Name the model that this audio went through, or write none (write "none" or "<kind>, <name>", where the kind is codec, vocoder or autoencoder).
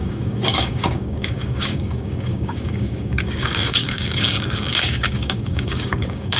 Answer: codec, DAC